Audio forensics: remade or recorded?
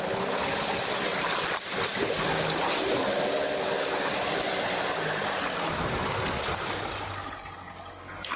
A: recorded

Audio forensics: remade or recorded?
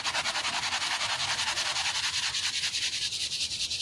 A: recorded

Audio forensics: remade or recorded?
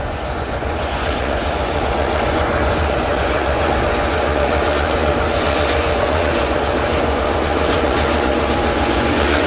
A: remade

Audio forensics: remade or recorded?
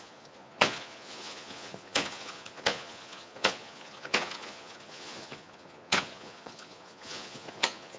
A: remade